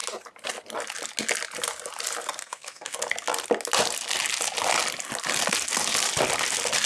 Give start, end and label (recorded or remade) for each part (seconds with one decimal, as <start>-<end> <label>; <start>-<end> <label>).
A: 0.0-2.4 recorded; 2.4-3.0 remade; 3.0-6.9 recorded